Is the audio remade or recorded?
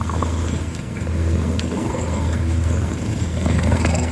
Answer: remade